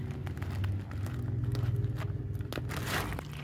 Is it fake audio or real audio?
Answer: real